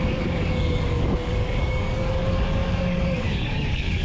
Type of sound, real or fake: fake